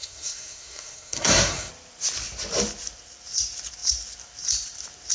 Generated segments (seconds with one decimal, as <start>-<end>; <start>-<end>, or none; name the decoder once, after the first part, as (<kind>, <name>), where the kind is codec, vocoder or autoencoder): 0.0-1.7 (codec, SNAC)